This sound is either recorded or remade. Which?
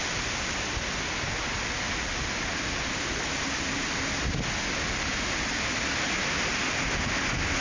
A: recorded